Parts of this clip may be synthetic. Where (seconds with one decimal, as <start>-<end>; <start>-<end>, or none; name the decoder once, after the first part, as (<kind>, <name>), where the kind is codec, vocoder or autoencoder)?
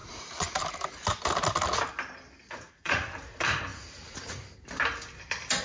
0.0-0.6 (vocoder, Vocos); 2.4-3.0; 3.7-4.4